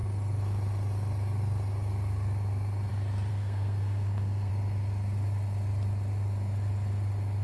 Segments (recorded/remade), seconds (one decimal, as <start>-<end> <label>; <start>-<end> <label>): 0.0-3.3 recorded; 3.3-4.5 remade; 4.5-7.4 recorded